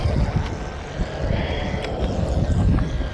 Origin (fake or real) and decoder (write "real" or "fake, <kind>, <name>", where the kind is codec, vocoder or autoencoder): real